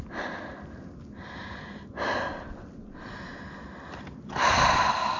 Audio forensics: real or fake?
real